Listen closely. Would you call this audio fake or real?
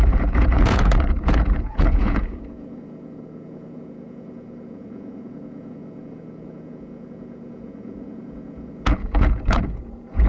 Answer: fake